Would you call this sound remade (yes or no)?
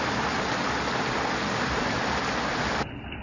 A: no